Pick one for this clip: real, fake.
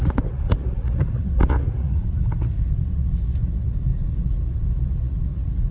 fake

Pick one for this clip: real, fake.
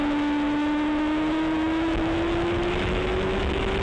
fake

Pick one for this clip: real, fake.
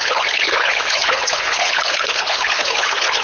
fake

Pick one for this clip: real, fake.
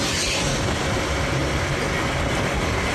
real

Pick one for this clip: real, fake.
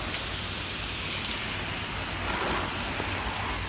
real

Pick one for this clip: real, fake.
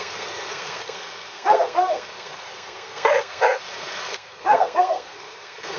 fake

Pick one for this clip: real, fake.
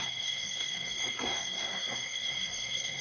fake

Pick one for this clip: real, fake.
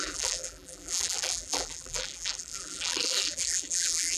fake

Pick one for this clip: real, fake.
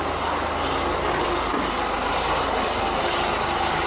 real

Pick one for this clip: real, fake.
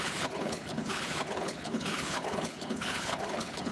fake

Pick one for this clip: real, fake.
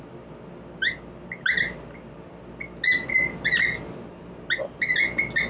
real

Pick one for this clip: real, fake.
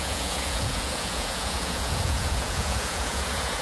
fake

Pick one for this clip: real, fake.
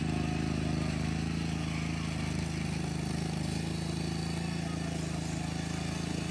real